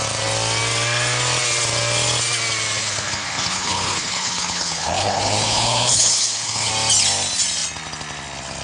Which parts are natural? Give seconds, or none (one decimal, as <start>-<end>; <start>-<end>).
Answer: 0.0-2.8; 6.7-8.6